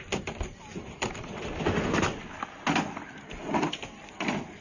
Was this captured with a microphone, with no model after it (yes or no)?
yes